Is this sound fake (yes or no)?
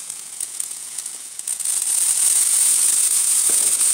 yes